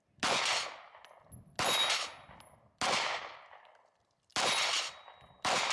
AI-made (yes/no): no